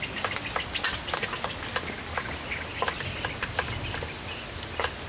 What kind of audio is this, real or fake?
real